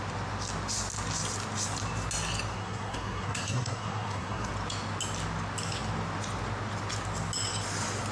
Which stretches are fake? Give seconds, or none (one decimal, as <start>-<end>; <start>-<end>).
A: 2.5-4.5